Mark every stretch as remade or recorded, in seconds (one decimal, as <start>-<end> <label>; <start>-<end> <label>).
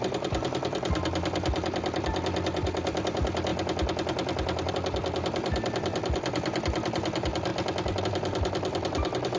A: 0.0-3.5 remade; 3.5-4.7 recorded; 4.7-7.5 remade; 7.5-8.0 recorded; 8.0-9.4 remade